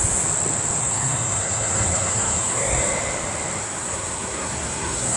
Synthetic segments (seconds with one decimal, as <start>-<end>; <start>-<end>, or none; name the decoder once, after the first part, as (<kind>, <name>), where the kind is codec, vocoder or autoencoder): 0.8-2.8 (codec, SNAC); 3.6-5.2